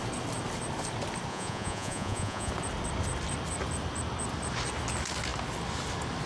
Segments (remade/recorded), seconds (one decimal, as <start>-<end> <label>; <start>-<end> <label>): 0.0-1.3 recorded; 1.3-2.5 remade; 2.5-6.3 recorded